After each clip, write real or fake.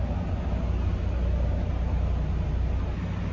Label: real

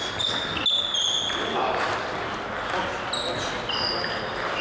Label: real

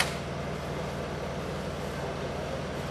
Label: real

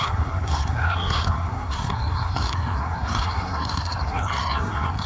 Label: fake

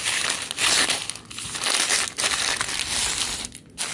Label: real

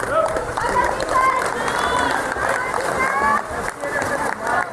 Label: real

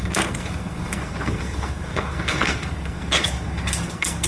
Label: fake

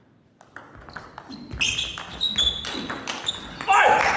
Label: real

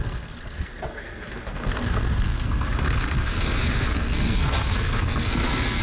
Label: fake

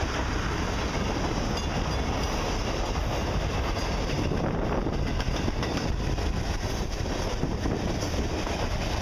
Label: real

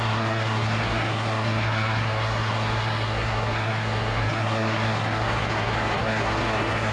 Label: fake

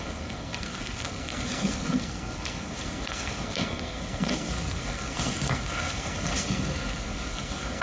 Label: fake